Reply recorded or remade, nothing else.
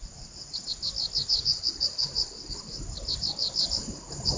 recorded